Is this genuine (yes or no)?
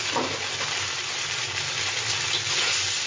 yes